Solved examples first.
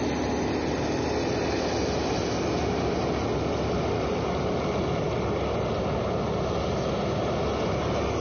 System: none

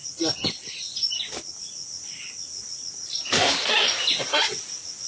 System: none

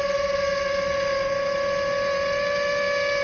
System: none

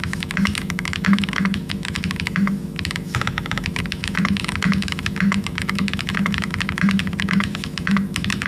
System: autoencoder, DAC-VAE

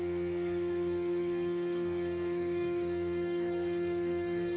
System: codec, SNAC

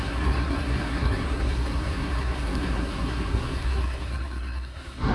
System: codec, SNAC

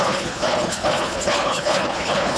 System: codec, HILCodec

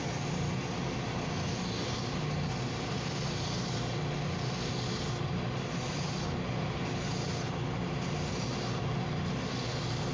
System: none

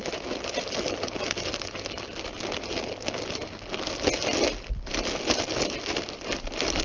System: none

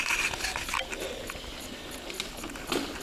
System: none